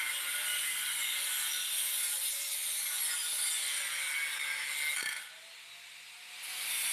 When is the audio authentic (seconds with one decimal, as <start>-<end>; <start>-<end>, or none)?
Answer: 2.6-6.9